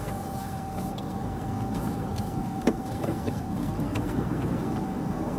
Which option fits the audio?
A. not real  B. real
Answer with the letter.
A